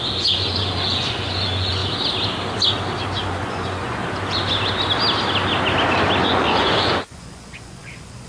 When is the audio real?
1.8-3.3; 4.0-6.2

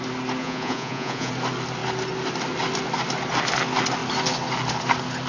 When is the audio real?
0.0-0.4; 1.3-5.3

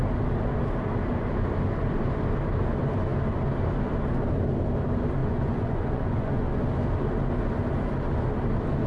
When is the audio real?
0.0-5.2; 6.6-8.9

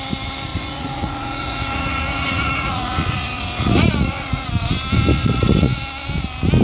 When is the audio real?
0.0-0.5; 4.5-5.1; 5.8-6.6

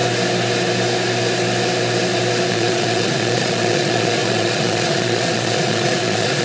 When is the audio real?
0.0-2.5